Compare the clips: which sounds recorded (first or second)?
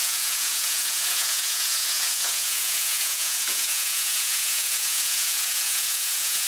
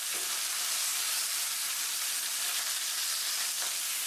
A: second